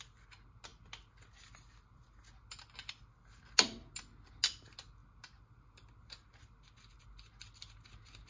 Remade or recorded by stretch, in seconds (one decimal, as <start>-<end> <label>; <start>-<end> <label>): 0.0-8.3 recorded